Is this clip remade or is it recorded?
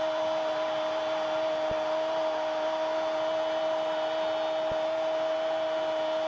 recorded